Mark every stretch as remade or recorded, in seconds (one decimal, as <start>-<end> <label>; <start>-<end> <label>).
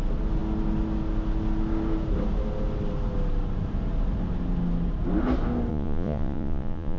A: 0.0-5.7 recorded; 5.7-7.0 remade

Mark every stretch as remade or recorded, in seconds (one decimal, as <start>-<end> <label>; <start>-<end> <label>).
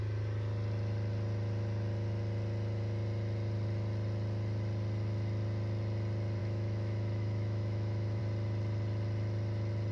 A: 0.0-6.4 recorded; 6.4-8.2 remade; 8.2-9.9 recorded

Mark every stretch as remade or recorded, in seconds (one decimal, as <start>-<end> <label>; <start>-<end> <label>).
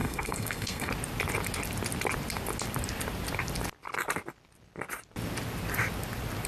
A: 0.0-0.9 remade; 0.9-6.5 recorded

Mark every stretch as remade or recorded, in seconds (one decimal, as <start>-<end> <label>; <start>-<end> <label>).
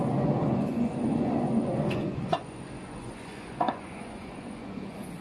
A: 0.0-5.2 remade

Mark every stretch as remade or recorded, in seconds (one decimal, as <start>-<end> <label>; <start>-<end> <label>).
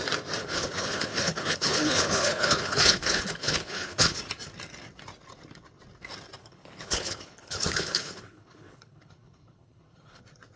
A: 0.0-0.4 recorded; 0.4-4.2 remade; 4.2-6.4 recorded; 6.4-10.2 remade; 10.2-10.6 recorded